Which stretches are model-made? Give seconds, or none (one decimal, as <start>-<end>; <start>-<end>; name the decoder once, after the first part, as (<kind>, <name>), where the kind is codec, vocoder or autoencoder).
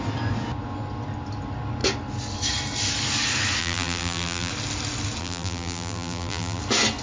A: 3.6-4.5 (vocoder, BigVGAN v2); 5.2-6.6